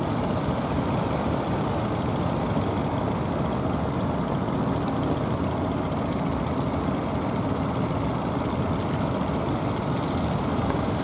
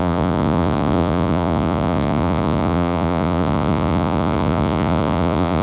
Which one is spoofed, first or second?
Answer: second